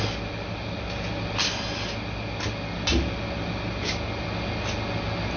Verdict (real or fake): real